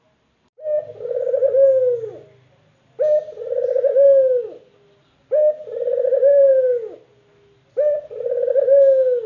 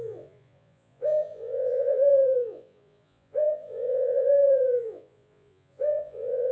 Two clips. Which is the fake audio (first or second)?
second